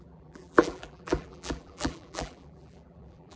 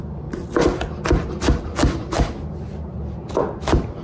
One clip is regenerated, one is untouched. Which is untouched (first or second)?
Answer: second